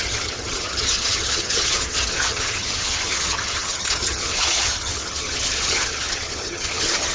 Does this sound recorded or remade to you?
remade